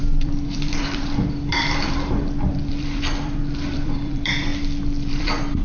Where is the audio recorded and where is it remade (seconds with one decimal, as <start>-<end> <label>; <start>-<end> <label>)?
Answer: 0.0-4.5 remade; 4.5-5.1 recorded; 5.1-5.6 remade